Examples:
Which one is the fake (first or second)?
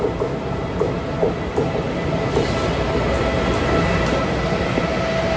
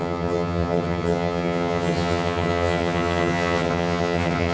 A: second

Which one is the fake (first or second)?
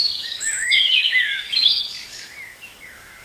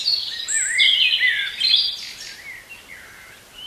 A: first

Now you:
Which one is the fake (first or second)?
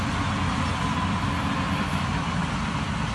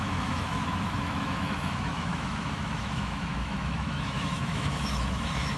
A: second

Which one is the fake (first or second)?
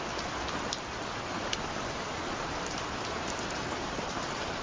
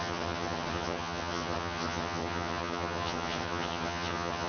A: second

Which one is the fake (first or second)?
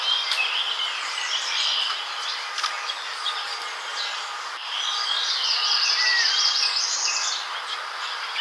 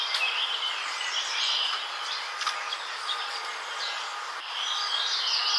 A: first